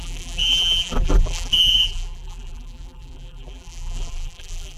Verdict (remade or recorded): remade